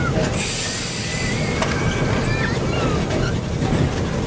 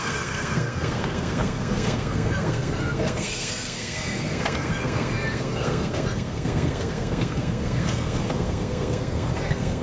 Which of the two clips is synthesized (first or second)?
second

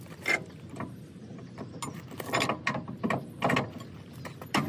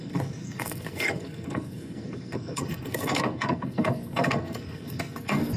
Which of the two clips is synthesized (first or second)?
second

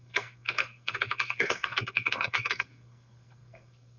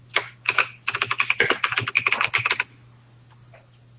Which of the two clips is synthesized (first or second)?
first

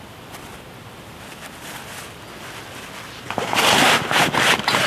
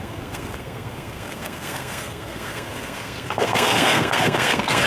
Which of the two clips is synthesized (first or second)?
second